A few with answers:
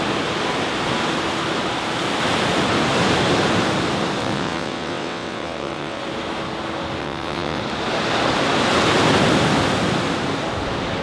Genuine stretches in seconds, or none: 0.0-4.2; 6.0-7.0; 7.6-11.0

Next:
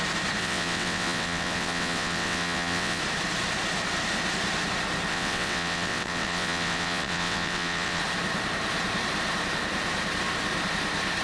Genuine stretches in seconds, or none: 0.0-0.4; 3.0-5.1; 8.0-11.2

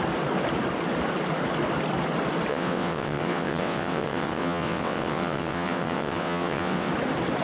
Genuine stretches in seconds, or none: 0.0-2.5; 6.9-7.4

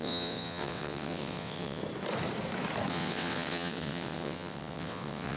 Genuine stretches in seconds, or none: 1.8-2.9

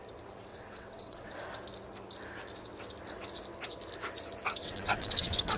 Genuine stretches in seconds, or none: 0.0-0.5; 1.3-4.6

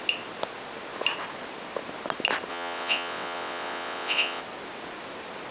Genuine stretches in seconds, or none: 0.0-2.5; 4.4-5.5

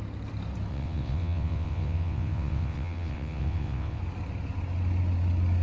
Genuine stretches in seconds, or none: 0.0-0.7; 4.0-5.6